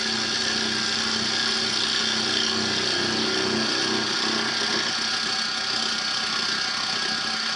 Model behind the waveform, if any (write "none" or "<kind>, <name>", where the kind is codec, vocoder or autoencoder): none